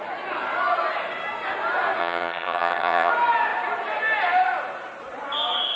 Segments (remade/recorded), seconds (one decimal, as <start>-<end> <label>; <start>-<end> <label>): 0.0-2.0 recorded; 2.0-3.1 remade; 3.1-5.8 recorded